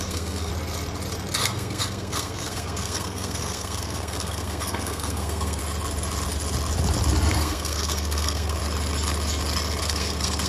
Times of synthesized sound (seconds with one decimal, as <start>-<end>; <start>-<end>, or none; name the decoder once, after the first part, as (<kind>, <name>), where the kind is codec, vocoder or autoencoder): 0.0-0.5 (codec, SNAC); 1.4-5.6; 7.3-8.6; 9.8-10.5